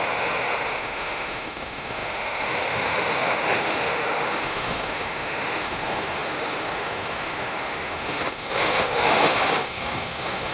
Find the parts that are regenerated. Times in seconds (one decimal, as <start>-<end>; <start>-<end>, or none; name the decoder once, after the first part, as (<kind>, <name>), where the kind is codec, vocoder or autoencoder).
0.0-10.5 (autoencoder, DAC-VAE)